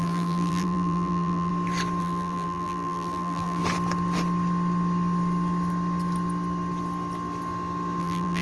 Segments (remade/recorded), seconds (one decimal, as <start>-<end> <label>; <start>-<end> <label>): 0.0-1.5 remade; 1.5-2.0 recorded; 2.0-3.6 remade; 3.6-8.0 recorded; 8.0-8.4 remade